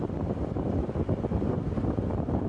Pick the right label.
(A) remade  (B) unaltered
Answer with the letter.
A